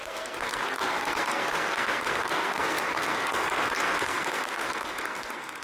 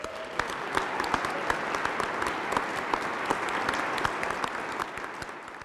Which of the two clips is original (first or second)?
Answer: second